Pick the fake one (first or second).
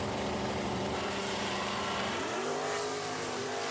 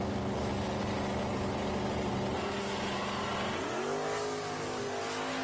first